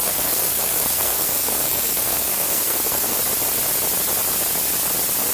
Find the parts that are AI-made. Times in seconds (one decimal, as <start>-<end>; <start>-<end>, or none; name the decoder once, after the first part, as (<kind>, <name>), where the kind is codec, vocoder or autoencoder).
0.0-3.2 (codec, SNAC)